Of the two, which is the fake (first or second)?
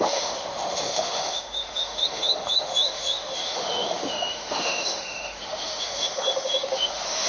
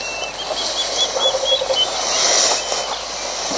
first